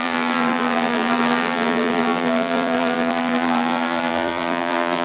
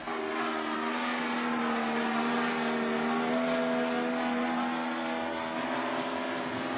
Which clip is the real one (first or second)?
second